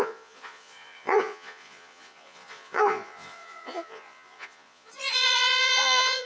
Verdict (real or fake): fake